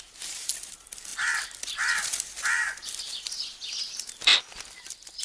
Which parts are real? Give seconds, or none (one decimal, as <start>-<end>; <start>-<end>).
0.0-5.2